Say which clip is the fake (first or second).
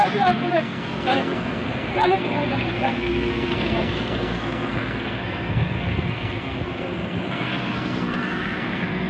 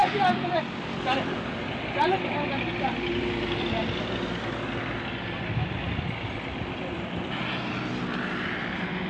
first